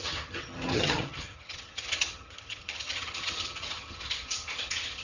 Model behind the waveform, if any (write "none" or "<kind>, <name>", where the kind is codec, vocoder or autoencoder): vocoder, HiFi-GAN